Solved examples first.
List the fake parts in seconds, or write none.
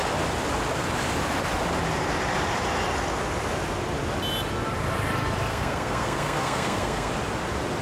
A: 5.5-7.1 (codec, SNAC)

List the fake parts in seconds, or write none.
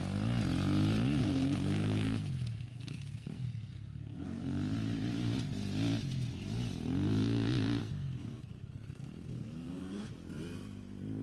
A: 1.2-4.4 (codec, SNAC); 7.8-10.1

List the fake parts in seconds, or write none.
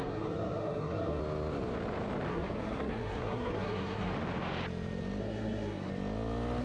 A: 0.0-1.2 (codec, SNAC); 2.3-4.1; 5.2-5.9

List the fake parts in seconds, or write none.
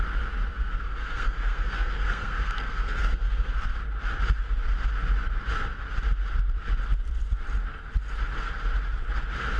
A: 0.5-3.8 (codec, SNAC)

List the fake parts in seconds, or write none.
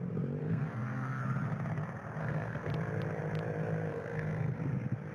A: 0.4-1.2 (codec, SNAC); 2.2-2.7; 3.9-4.6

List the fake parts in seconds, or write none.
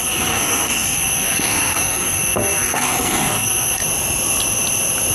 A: 0.0-3.8 (codec, SNAC)